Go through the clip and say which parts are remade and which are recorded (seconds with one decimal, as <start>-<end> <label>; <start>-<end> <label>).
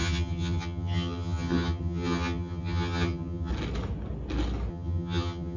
0.0-3.5 remade; 3.5-4.7 recorded; 4.7-5.6 remade